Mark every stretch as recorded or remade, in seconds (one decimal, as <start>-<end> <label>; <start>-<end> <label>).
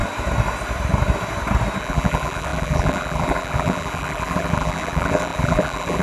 0.0-1.8 recorded; 1.8-6.0 remade